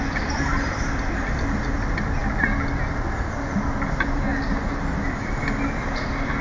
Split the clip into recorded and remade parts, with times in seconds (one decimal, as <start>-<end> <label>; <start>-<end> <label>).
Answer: 0.0-6.4 recorded

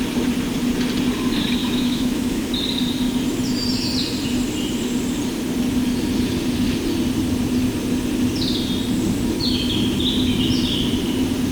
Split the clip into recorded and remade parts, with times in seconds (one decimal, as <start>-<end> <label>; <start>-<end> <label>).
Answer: 0.0-1.6 recorded; 1.6-2.5 remade; 2.5-11.5 recorded

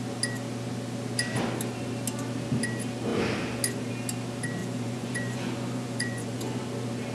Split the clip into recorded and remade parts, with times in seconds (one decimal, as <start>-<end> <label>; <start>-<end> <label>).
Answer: 0.0-4.6 recorded; 4.6-6.6 remade; 6.6-7.1 recorded

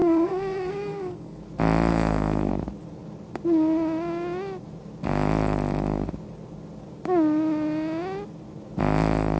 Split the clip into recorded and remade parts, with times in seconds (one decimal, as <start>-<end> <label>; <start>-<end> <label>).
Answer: 0.0-1.4 remade; 1.4-1.9 recorded; 1.9-2.5 remade; 2.5-9.4 recorded

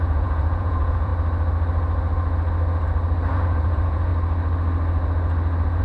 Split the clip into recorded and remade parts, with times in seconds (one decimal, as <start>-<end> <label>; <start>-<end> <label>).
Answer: 0.0-1.1 remade; 1.1-3.3 recorded; 3.3-4.1 remade; 4.1-5.8 recorded

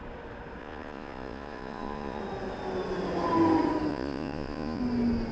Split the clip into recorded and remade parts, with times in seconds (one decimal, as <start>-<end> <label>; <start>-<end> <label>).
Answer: 0.0-0.6 recorded; 0.6-2.2 remade; 2.2-3.9 recorded; 3.9-4.8 remade; 4.8-5.3 recorded